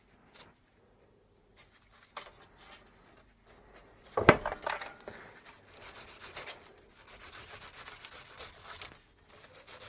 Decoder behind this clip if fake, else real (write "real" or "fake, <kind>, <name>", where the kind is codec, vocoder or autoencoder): real